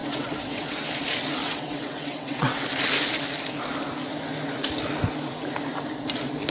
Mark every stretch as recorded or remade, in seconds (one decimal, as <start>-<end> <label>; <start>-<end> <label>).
0.0-0.9 remade; 0.9-1.4 recorded; 1.4-2.6 remade; 2.6-6.5 recorded